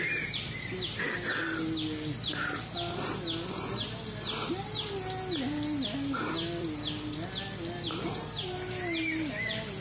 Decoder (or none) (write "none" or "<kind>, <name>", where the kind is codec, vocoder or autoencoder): vocoder, BigVGAN v2